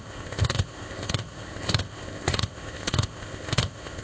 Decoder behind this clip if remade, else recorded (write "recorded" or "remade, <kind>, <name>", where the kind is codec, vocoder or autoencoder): remade, codec, ZipCodec